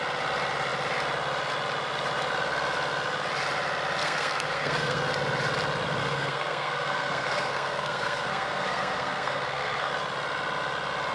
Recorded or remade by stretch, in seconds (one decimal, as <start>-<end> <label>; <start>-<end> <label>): 0.0-4.0 recorded; 4.0-5.0 remade; 5.0-6.0 recorded; 6.0-9.9 remade; 9.9-11.1 recorded